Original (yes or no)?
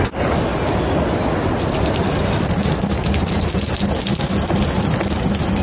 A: yes